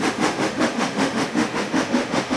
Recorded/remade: remade